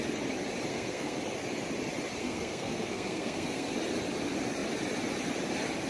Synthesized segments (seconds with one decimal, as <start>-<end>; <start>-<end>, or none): 0.7-1.2; 2.2-3.7